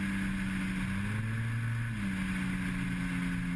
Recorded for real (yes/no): yes